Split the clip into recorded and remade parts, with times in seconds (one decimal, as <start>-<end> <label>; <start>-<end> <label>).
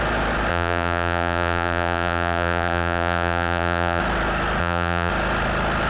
0.0-0.5 recorded; 0.5-4.0 remade; 4.0-4.6 recorded; 4.6-5.1 remade; 5.1-5.9 recorded